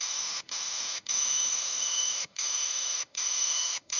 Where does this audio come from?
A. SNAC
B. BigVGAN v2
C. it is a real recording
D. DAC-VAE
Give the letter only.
D